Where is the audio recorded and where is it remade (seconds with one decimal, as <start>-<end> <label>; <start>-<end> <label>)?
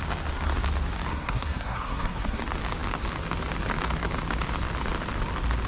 0.0-1.1 recorded; 1.1-2.4 remade; 2.4-5.7 recorded